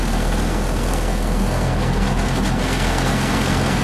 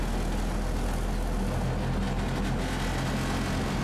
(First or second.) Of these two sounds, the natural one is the second